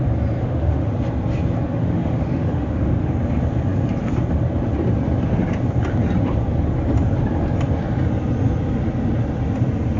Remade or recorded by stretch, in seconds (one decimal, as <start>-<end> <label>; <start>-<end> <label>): 0.0-0.4 recorded; 0.4-0.9 remade; 0.9-1.7 recorded; 1.7-3.1 remade; 3.1-10.0 recorded

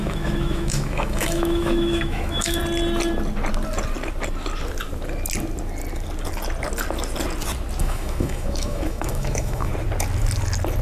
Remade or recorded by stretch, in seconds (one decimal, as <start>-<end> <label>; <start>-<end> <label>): 0.0-2.6 remade; 2.6-7.8 recorded; 7.8-9.7 remade; 9.7-10.8 recorded